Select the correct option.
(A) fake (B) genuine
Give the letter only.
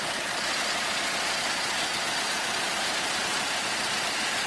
B